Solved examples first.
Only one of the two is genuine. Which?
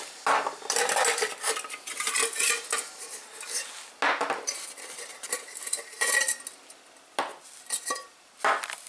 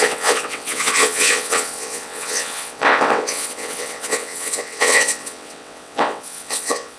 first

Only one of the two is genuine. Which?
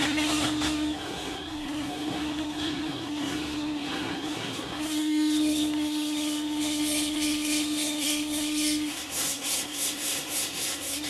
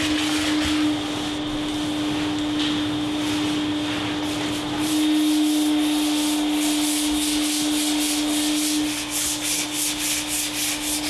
second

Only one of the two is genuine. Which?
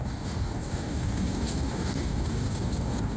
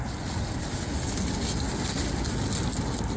second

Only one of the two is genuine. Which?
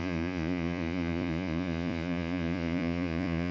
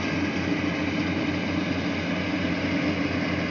second